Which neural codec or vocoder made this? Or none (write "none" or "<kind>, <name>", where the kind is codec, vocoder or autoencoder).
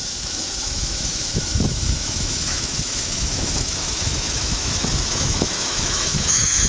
autoencoder, DAC-VAE